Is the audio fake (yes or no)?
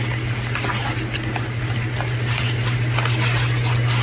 no